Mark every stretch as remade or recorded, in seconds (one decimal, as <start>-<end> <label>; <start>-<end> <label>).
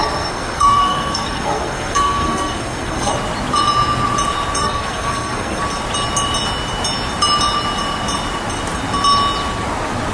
0.0-3.1 remade; 3.1-4.6 recorded; 4.6-5.6 remade; 5.6-10.1 recorded